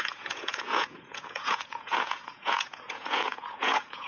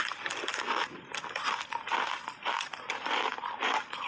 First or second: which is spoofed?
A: first